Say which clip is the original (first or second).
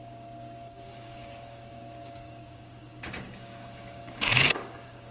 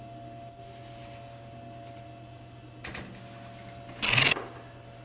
second